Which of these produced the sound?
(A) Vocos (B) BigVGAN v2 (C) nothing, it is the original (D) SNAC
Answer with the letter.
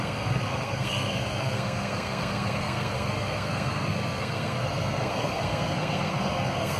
D